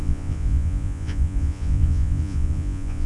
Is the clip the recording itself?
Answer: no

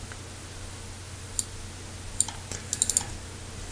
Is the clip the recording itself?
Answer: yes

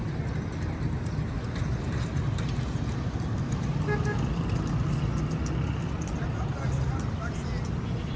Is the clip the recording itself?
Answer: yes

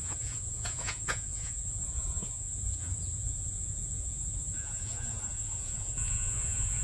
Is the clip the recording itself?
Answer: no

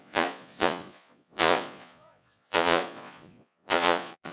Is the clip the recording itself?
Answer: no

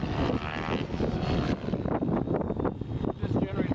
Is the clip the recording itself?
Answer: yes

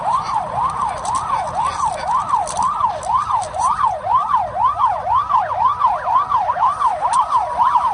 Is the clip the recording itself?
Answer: yes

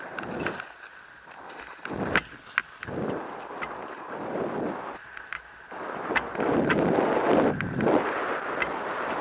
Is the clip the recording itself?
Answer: yes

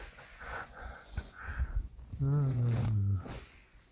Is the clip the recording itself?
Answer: no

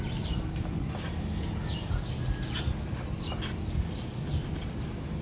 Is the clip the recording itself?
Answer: yes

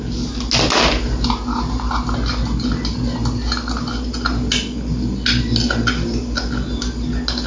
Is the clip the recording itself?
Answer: yes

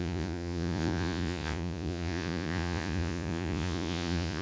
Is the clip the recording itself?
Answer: no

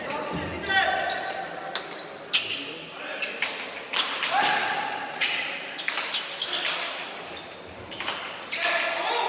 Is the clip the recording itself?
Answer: yes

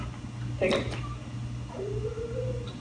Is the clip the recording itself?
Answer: yes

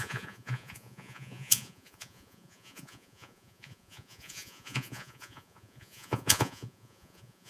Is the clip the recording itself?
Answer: no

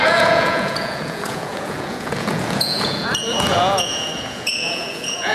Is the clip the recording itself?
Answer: no